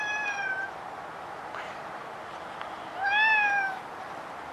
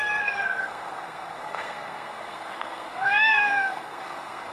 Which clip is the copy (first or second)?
second